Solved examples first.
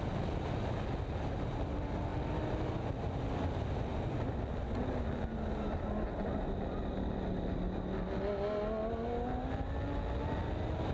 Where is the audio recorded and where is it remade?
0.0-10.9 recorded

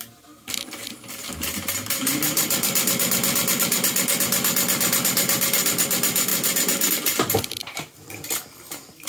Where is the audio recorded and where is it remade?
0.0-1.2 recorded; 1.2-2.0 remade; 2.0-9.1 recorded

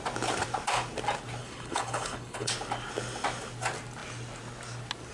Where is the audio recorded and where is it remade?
0.0-1.4 recorded; 1.4-2.5 remade; 2.5-5.1 recorded